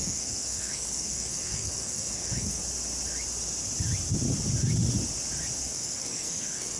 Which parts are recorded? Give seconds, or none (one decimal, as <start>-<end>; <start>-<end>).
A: 2.6-5.6